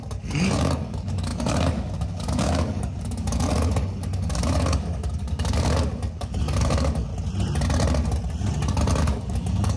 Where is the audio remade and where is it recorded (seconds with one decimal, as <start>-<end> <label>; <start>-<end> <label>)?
0.0-7.1 remade; 7.1-9.0 recorded; 9.0-9.8 remade